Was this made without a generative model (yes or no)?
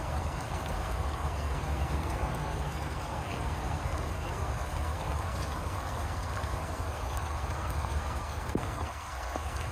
no